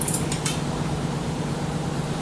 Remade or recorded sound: remade